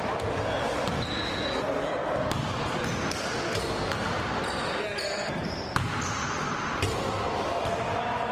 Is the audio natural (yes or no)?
yes